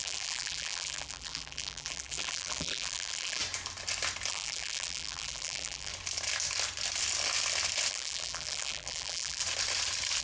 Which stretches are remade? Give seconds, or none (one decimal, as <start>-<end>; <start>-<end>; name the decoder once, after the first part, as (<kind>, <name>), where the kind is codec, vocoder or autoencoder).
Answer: 0.0-3.4 (vocoder, BigVGAN v2); 4.3-5.9; 7.9-9.4